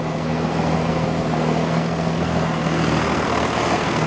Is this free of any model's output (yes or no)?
no